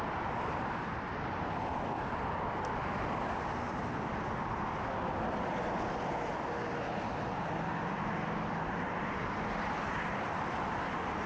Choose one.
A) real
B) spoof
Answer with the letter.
A